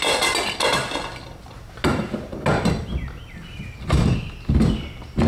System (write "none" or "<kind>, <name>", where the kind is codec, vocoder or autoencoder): none